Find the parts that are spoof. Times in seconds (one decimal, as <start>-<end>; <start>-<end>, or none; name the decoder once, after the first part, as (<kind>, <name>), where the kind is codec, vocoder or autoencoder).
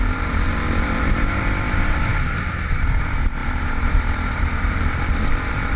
0.0-2.1 (vocoder, BigVGAN v2); 2.7-5.8